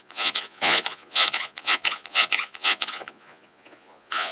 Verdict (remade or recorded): remade